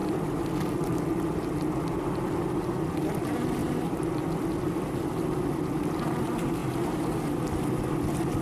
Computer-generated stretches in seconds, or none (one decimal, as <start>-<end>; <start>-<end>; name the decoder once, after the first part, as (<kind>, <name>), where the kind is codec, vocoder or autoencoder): 0.0-0.5 (vocoder, BigVGAN v2); 3.6-4.5